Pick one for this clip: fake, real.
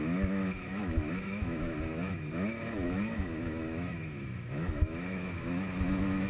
fake